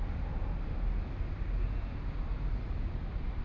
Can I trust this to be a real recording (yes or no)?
yes